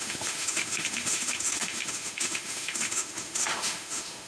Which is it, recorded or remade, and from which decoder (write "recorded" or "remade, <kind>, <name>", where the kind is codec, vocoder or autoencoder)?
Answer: remade, autoencoder, DAC-VAE